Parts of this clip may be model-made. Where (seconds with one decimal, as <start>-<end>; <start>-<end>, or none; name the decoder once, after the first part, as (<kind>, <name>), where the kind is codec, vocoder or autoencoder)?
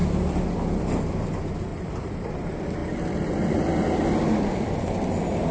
1.7-2.3 (vocoder, BigVGAN v2)